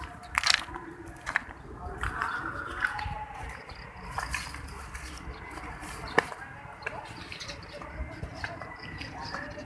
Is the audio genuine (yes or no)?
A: yes